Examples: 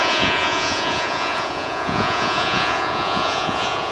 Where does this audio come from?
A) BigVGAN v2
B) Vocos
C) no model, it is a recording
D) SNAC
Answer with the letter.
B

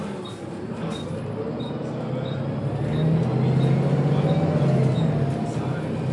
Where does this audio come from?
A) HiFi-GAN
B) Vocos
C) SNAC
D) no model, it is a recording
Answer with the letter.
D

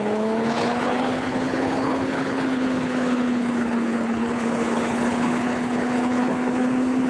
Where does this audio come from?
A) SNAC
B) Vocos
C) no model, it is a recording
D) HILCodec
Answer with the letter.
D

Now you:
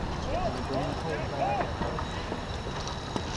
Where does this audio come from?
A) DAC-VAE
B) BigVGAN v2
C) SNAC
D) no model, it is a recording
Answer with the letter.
D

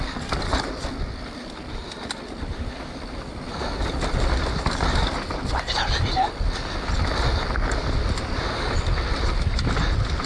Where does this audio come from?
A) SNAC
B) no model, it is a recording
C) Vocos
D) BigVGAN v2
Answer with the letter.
B